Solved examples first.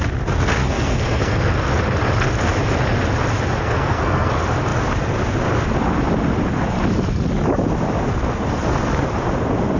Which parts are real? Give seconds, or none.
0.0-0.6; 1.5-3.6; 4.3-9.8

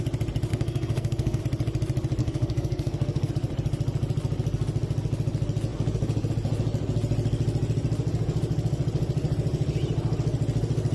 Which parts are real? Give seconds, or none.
0.0-0.5; 1.4-2.2; 3.3-10.9

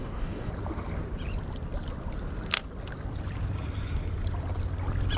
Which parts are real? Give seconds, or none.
0.5-5.2

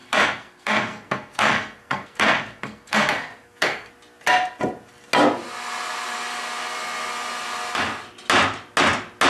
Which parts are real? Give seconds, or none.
3.9-9.3